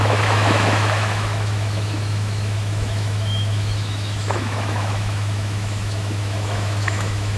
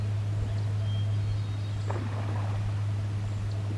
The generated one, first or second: first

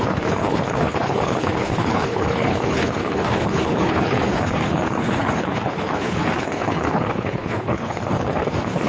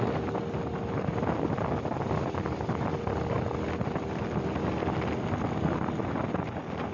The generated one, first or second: first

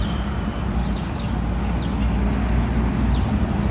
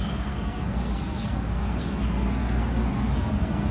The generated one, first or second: second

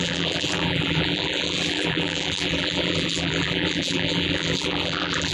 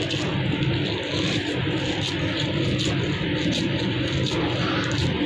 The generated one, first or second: first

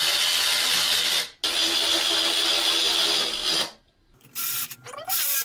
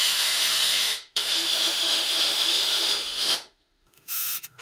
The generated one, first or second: second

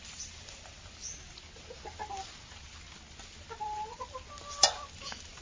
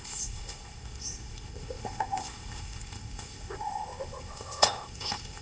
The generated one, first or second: second